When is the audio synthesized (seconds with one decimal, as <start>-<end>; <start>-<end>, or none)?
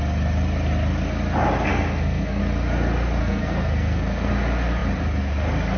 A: 1.7-2.4; 3.2-4.3